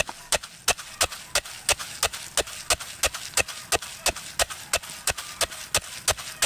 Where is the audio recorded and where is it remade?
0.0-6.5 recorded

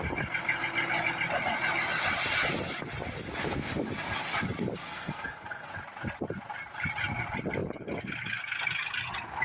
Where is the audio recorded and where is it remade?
0.0-4.8 recorded; 4.8-5.7 remade; 5.7-9.4 recorded